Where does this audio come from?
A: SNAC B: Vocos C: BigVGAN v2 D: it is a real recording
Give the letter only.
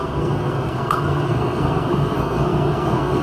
A